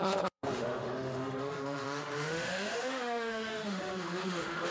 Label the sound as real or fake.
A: fake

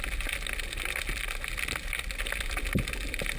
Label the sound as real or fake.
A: real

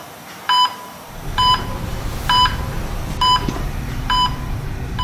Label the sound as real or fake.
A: fake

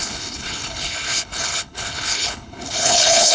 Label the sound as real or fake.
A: fake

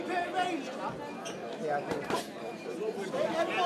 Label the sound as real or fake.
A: real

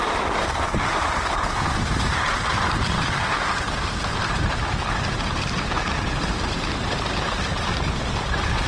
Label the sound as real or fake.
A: fake